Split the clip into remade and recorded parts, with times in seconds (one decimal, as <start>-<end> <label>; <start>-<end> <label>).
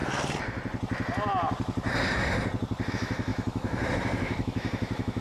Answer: 0.0-2.9 recorded; 2.9-5.2 remade